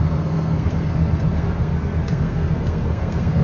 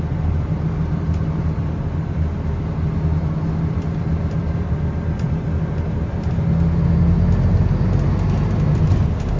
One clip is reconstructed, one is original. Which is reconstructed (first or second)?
first